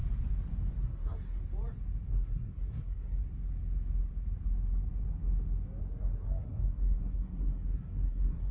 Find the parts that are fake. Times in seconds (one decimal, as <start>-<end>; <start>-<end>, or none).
0.8-1.4; 2.1-3.2; 5.8-8.5

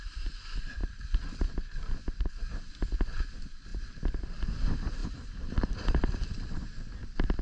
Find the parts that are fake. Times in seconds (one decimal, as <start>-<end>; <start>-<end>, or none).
none

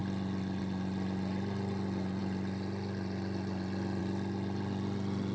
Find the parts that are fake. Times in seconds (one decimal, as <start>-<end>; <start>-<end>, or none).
none

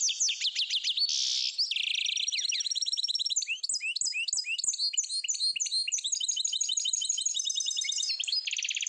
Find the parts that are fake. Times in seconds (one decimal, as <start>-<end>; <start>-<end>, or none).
none

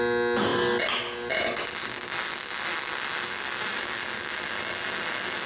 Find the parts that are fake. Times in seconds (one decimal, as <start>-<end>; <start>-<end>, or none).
none

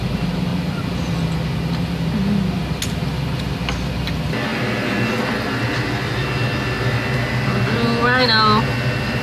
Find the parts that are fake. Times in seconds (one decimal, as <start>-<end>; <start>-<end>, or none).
none